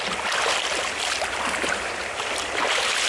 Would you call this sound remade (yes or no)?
no